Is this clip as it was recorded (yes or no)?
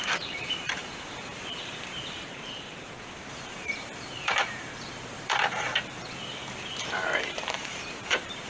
no